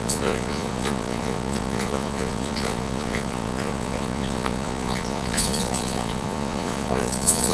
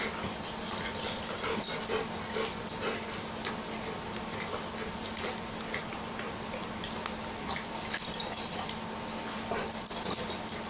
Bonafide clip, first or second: second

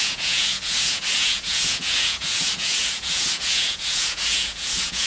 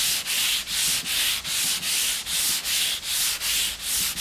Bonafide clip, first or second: second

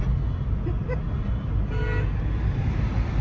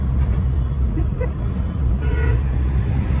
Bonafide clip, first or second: first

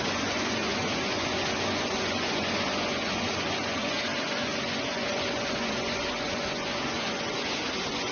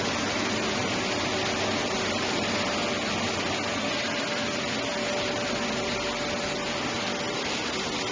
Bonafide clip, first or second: second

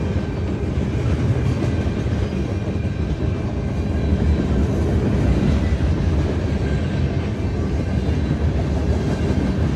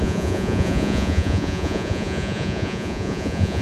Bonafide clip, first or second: first